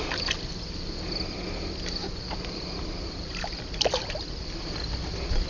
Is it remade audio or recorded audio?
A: recorded